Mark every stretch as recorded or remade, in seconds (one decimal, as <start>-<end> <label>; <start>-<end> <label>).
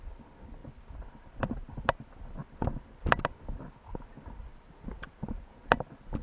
0.0-6.2 recorded